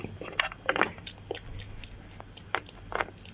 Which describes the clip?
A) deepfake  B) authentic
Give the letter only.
B